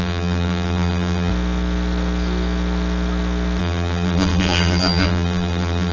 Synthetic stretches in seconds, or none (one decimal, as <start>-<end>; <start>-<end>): 0.0-1.3; 3.6-5.9